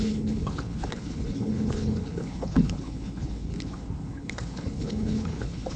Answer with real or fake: fake